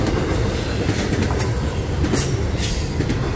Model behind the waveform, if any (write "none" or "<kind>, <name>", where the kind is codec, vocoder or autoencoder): none